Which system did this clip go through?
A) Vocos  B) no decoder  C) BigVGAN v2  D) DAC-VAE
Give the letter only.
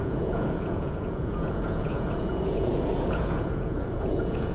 A